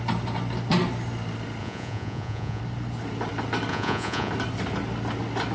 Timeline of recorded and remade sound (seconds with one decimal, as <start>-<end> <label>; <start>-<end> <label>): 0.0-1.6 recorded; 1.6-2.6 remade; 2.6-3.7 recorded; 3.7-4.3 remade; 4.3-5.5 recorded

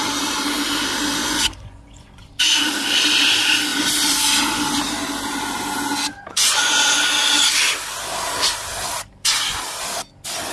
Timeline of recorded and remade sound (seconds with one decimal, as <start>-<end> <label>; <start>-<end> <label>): 0.0-1.2 recorded; 1.2-2.3 remade; 2.3-6.3 recorded; 6.3-7.0 remade; 7.0-10.5 recorded

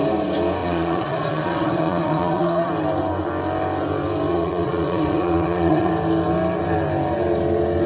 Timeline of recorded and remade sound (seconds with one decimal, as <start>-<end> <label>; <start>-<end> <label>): 0.0-0.6 recorded; 0.6-2.7 remade; 2.7-4.3 recorded; 4.3-5.9 remade; 5.9-7.9 recorded